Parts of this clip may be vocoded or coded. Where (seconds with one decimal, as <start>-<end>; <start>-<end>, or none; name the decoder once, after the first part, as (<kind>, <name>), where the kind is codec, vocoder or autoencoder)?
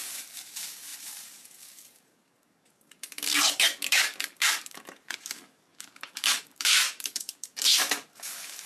0.0-8.7 (codec, DAC)